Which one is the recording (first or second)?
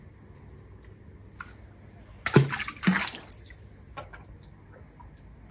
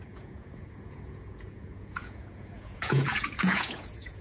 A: first